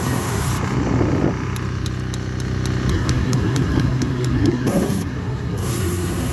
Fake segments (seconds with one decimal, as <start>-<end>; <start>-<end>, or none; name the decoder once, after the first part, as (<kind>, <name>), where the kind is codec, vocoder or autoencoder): 0.0-0.5 (codec, SNAC); 2.9-6.3